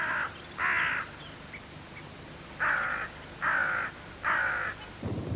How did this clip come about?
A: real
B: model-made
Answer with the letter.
A